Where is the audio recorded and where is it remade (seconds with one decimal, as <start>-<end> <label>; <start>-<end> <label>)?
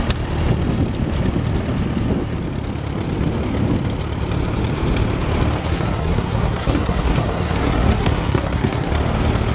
0.0-5.6 recorded; 5.6-8.9 remade; 8.9-9.5 recorded